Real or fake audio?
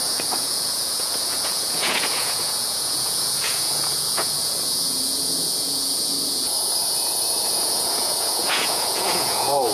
fake